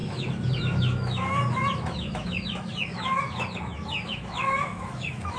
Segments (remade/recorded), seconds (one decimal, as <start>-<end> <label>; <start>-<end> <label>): 0.0-5.4 remade